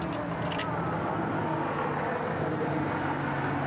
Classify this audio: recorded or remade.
recorded